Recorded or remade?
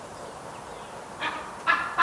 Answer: recorded